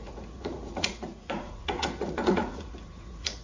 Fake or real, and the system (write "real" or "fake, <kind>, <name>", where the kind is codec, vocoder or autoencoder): fake, vocoder, Vocos